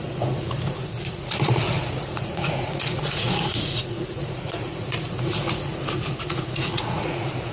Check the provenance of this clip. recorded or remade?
remade